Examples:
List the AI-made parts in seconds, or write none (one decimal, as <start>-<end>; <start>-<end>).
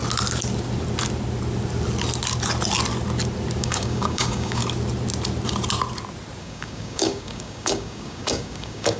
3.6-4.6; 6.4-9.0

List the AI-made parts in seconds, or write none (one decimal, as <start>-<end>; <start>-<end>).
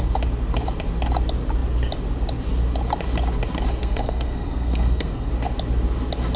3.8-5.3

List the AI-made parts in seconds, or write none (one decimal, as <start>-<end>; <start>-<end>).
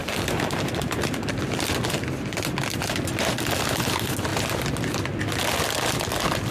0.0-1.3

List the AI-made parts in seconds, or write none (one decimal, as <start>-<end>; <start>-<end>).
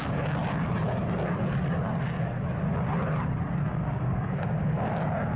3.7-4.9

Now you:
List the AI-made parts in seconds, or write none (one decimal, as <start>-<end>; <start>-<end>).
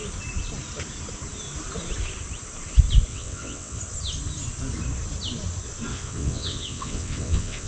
3.1-3.8; 5.9-7.7